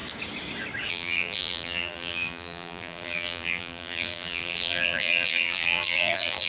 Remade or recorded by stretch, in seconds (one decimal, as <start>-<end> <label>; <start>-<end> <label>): 0.0-0.9 recorded; 0.9-6.5 remade